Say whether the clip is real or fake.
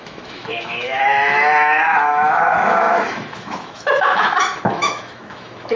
fake